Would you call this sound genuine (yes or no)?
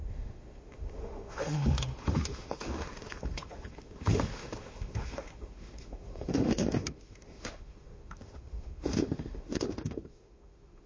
no